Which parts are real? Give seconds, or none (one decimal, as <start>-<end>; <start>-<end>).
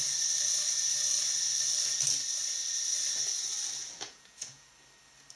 0.0-3.8; 4.7-5.4